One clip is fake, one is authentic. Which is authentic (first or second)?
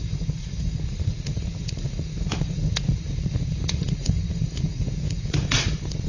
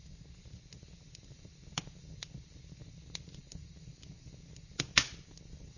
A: second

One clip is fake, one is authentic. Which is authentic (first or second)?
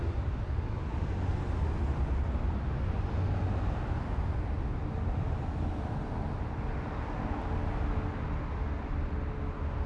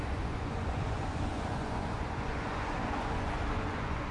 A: first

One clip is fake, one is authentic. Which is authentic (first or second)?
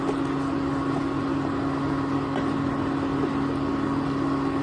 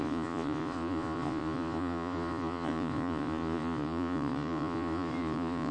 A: first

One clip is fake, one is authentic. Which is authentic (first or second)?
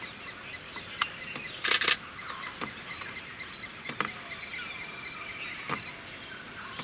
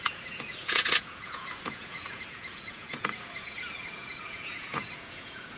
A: first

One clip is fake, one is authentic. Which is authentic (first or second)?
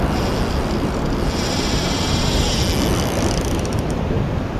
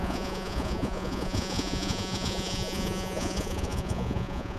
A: first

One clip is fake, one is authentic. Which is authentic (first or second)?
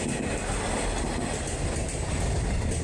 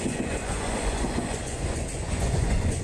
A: first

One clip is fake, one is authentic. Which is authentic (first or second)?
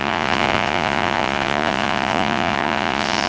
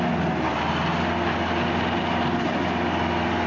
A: second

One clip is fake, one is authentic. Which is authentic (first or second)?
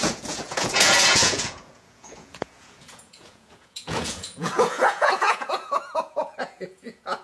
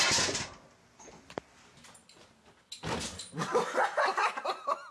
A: second